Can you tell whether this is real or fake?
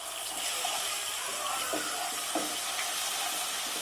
real